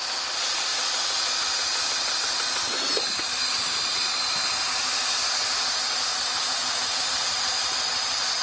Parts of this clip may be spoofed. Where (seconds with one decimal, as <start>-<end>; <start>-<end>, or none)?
6.1-7.0